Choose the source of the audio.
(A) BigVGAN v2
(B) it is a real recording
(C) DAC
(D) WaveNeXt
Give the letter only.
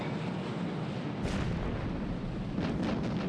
B